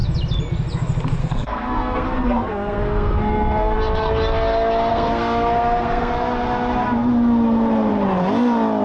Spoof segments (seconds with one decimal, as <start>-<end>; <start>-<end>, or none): 1.2-3.8; 4.9-6.1